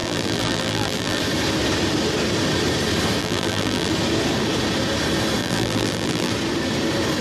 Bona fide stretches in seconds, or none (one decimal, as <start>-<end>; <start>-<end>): 1.2-3.2; 3.9-5.4; 6.3-7.2